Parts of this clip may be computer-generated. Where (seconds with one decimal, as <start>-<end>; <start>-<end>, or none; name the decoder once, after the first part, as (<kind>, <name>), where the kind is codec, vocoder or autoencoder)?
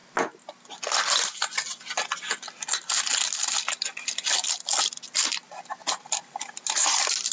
none